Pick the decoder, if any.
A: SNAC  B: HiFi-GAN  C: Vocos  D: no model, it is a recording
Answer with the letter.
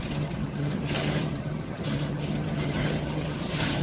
B